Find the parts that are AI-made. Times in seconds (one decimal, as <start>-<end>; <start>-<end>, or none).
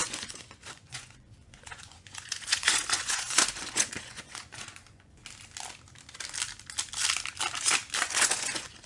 0.0-5.2; 8.0-8.9